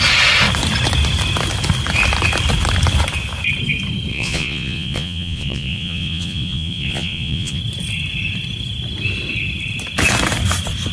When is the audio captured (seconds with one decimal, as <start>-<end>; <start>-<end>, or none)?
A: 0.0-4.1; 7.6-10.9